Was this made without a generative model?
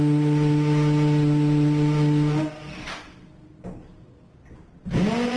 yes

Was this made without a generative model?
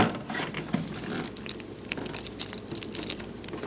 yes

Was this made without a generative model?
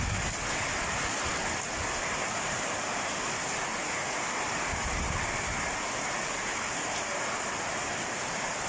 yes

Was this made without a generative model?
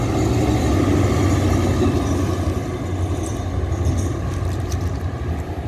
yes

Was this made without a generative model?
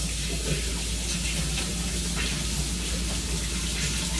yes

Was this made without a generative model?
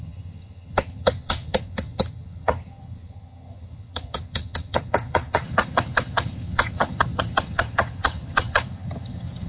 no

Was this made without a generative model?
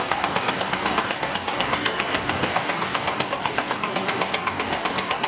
no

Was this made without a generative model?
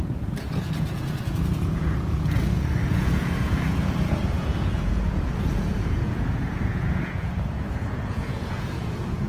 no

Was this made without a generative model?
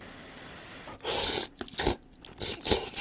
yes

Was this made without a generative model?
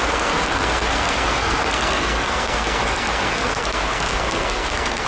no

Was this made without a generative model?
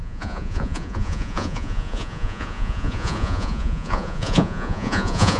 no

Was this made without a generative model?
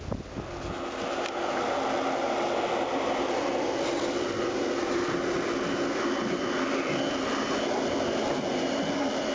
yes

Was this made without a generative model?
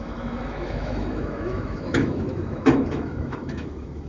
no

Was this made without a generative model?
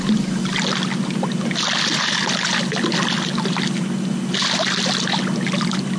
yes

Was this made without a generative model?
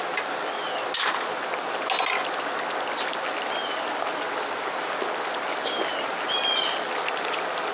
yes